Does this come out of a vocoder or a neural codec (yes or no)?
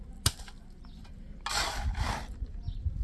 no